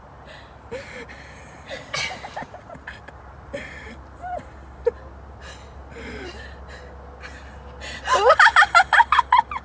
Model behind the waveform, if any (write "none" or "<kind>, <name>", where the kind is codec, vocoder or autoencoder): none